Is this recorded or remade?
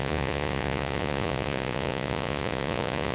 remade